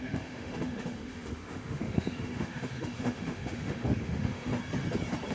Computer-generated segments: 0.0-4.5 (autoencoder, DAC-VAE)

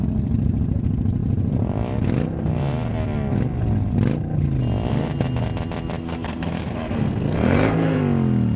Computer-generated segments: 6.0-8.0 (codec, SNAC)